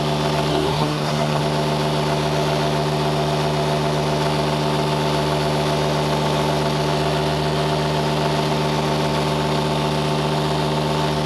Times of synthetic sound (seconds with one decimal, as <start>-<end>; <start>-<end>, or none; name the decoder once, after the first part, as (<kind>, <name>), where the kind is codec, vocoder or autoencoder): 0.5-1.4 (codec, SNAC)